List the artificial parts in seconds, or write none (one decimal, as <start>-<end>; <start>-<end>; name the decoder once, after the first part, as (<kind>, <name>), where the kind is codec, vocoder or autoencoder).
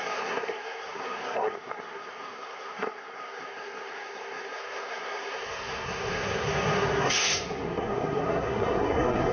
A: 0.0-9.3 (codec, SNAC)